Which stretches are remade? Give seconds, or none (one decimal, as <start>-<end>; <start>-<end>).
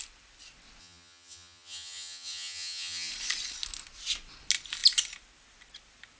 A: 0.8-3.1